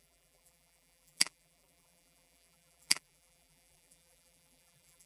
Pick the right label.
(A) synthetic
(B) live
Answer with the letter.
A